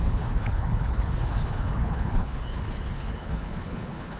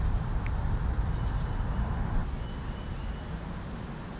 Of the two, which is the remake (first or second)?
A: first